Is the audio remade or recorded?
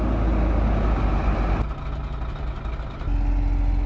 recorded